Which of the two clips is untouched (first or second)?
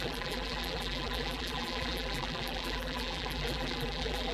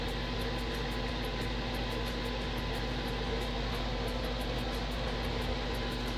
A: second